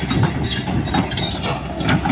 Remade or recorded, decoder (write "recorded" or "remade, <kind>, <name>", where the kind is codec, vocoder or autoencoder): recorded